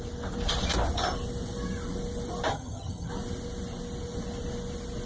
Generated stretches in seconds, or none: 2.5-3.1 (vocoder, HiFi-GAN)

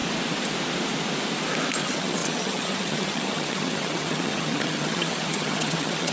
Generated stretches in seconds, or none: 1.8-6.1 (vocoder, HiFi-GAN)

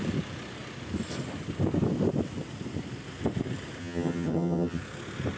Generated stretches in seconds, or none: 3.8-4.8 (vocoder, HiFi-GAN)

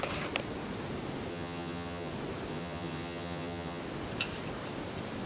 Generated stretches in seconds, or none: 1.3-2.1 (vocoder, HiFi-GAN); 2.5-3.8

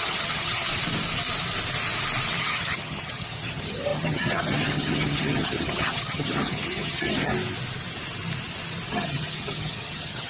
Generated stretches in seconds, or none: 0.0-0.7 (vocoder, HiFi-GAN); 2.4-7.3; 8.9-10.3

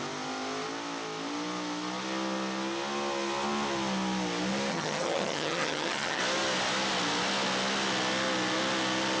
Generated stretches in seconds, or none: 4.7-6.2 (vocoder, HiFi-GAN)

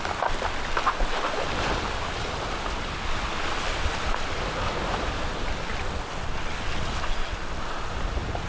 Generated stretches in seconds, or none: none